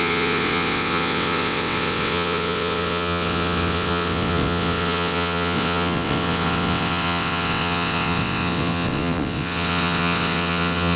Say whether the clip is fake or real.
fake